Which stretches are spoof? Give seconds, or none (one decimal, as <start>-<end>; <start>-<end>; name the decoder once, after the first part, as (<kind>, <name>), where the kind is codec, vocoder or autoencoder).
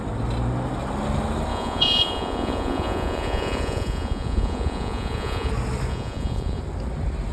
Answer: 1.5-5.5 (vocoder, Vocos); 5.9-6.6